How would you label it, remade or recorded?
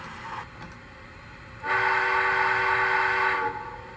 recorded